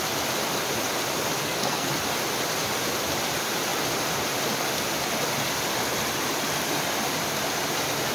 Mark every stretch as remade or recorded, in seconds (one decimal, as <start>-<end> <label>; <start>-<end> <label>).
0.0-1.4 recorded; 1.4-1.9 remade; 1.9-8.1 recorded